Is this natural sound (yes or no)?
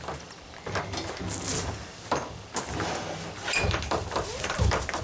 yes